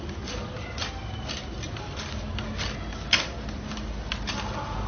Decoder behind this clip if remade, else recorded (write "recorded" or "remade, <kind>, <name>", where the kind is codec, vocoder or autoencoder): recorded